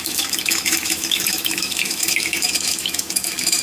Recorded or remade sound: remade